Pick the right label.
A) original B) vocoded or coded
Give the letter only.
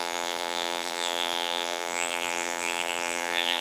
B